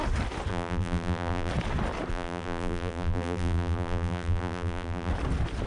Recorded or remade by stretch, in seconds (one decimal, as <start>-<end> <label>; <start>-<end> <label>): 0.0-0.5 recorded; 0.5-1.5 remade; 1.5-2.1 recorded; 2.1-5.1 remade; 5.1-5.7 recorded

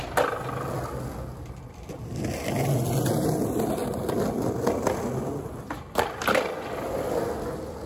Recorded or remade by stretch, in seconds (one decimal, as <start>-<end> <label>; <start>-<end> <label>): 0.0-7.9 recorded

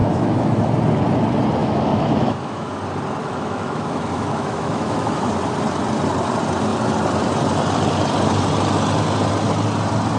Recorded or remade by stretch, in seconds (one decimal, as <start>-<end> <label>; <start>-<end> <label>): 0.0-0.7 remade; 0.7-1.6 recorded; 1.6-2.8 remade; 2.8-3.2 recorded; 3.2-5.3 remade; 5.3-10.2 recorded

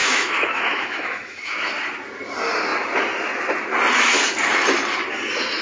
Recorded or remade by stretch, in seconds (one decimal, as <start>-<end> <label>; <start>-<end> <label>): 0.0-1.7 remade; 1.7-5.6 recorded

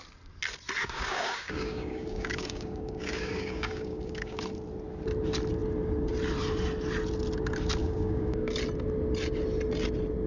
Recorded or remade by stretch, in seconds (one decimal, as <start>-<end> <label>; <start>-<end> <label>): 0.0-0.8 recorded; 0.8-4.4 remade; 4.4-7.8 recorded; 7.8-8.5 remade; 8.5-10.3 recorded

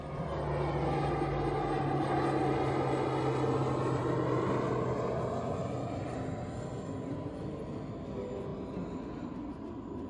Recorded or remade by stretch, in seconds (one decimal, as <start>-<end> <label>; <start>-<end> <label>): 0.0-10.1 recorded